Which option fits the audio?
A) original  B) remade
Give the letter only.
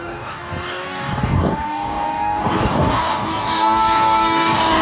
B